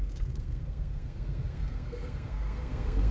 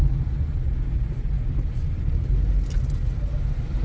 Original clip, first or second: second